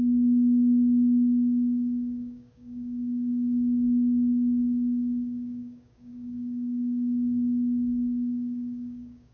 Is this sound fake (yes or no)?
yes